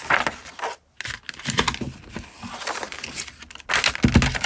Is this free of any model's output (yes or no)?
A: yes